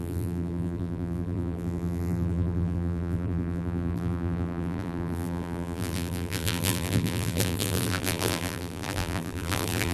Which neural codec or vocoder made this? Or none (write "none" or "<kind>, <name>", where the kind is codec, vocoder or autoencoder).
vocoder, BigVGAN v2